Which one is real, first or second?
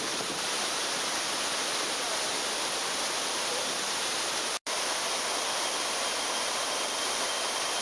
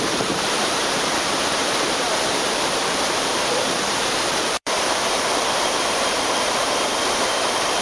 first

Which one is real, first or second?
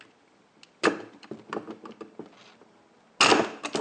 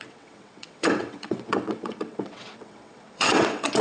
first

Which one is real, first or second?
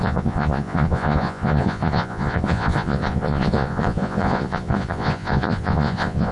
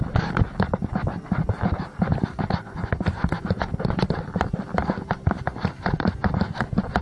second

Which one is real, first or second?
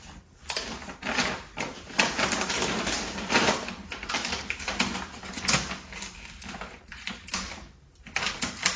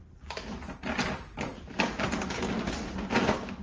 second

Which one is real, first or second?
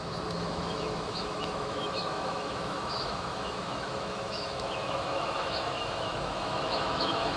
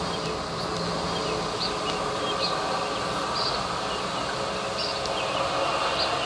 second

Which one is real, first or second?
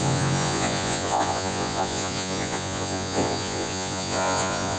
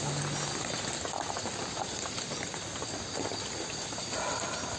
second